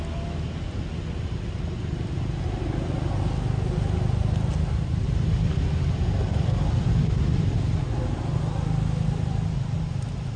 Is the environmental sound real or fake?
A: real